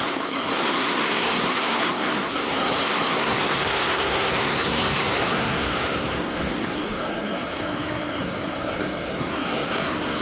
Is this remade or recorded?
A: remade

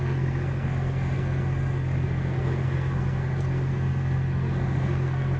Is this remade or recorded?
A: remade